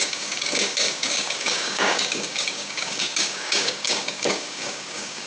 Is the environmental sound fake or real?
fake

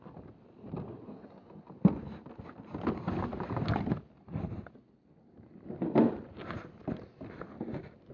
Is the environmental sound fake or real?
real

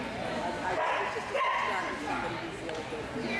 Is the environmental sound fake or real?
real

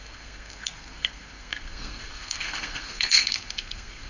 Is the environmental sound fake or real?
fake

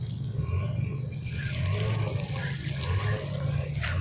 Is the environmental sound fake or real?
real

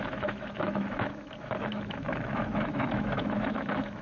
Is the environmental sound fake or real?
fake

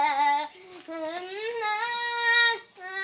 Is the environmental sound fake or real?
real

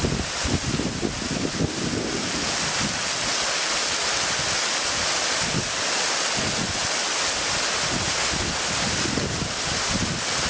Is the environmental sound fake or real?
real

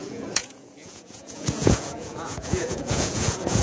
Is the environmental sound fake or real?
fake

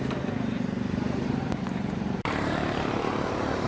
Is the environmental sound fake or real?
fake